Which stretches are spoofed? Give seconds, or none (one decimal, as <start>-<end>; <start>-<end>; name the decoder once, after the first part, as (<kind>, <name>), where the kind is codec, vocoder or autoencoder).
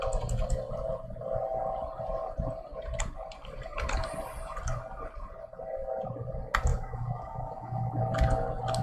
6.7-8.0 (autoencoder, DAC-VAE)